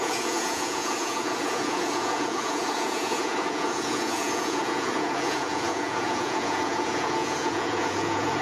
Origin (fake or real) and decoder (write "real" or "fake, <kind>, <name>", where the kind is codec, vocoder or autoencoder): fake, vocoder, Vocos